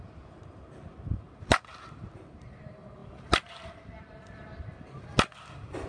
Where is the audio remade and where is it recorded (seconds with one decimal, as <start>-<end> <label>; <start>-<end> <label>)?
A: 0.0-3.0 recorded; 3.0-4.6 remade; 4.6-5.9 recorded